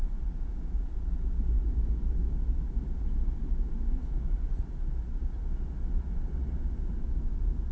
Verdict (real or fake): real